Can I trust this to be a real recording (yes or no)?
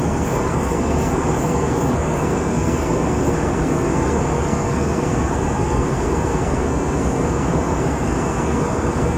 no